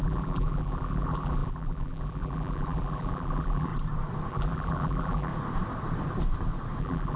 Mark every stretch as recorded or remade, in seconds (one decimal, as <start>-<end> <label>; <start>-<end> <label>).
0.0-3.7 remade; 3.7-4.3 recorded; 4.3-5.3 remade; 5.3-6.8 recorded; 6.8-7.2 remade